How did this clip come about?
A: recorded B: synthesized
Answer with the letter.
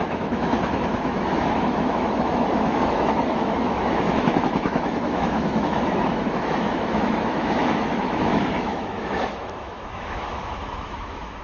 B